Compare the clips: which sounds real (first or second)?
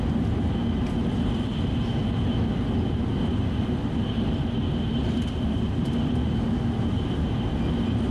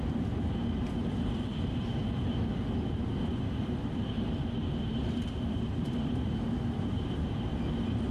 first